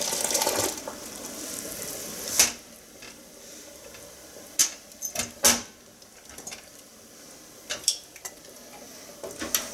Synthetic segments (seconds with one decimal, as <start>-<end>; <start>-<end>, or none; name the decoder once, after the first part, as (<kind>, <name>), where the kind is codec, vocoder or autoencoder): none